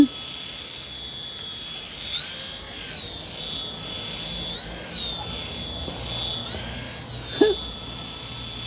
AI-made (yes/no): no